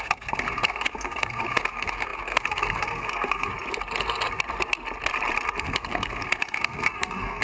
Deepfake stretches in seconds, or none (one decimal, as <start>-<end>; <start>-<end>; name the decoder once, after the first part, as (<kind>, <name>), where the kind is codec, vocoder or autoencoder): 0.0-3.5 (codec, SNAC); 5.6-7.4